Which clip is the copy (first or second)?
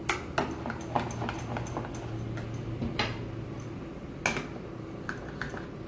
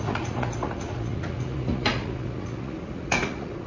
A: second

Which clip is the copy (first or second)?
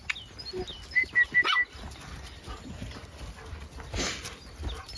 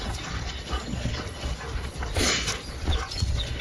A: second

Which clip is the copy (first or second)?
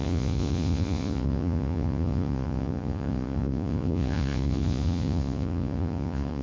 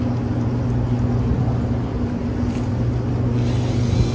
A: first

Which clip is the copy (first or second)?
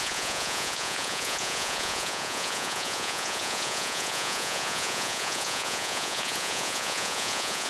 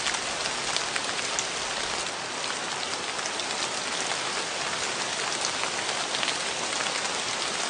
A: first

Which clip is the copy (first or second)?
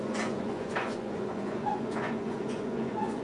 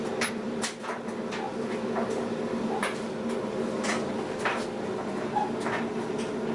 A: first